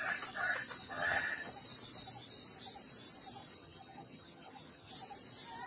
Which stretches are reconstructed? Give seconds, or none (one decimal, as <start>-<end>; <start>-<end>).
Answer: 0.8-1.5; 3.4-4.9

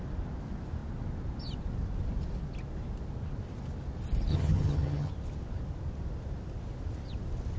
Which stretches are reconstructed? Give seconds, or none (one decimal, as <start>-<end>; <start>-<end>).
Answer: 4.3-5.1